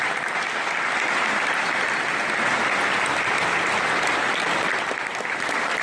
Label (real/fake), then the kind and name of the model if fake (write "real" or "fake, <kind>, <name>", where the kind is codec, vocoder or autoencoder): real